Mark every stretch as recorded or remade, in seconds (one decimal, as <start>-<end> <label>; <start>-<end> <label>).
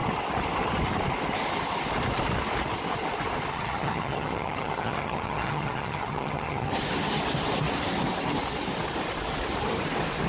0.0-3.5 recorded; 3.5-6.7 remade; 6.7-10.3 recorded